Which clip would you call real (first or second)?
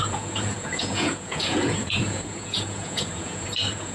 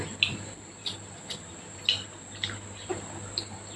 second